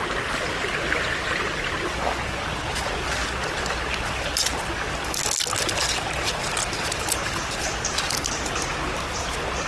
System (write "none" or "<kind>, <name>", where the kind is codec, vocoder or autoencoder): none